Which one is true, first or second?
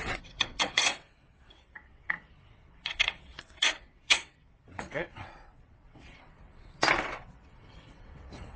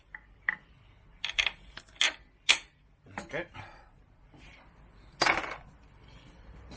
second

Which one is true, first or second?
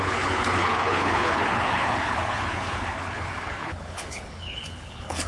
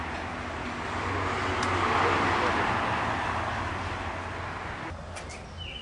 second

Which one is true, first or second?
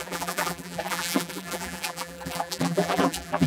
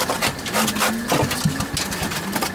second